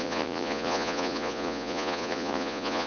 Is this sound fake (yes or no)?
yes